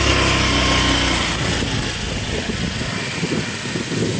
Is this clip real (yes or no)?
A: yes